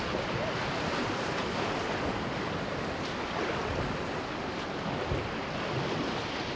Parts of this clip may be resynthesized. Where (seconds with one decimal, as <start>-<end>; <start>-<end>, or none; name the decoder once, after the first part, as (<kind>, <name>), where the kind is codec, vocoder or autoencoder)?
none